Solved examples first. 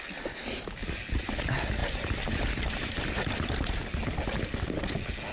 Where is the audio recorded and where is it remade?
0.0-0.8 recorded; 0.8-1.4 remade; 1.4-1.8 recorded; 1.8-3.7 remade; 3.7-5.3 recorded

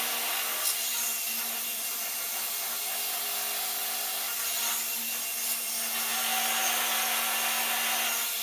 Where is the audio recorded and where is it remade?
0.0-8.4 recorded

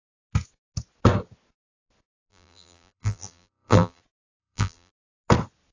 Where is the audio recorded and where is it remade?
0.0-2.3 recorded; 2.3-4.0 remade; 4.0-4.4 recorded; 4.4-4.9 remade; 4.9-5.7 recorded